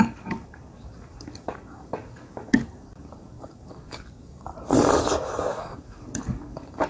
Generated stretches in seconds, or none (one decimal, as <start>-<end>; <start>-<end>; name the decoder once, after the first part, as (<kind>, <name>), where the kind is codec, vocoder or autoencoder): 0.0-4.5 (codec, DAC); 5.5-6.9